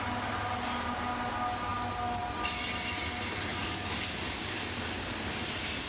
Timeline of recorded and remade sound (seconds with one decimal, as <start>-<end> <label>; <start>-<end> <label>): 0.0-3.5 recorded; 3.5-5.3 remade; 5.3-5.9 recorded